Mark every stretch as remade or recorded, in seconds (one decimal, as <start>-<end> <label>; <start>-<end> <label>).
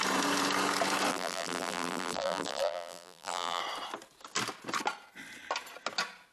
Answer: 0.0-1.1 recorded; 1.1-3.6 remade; 3.6-6.3 recorded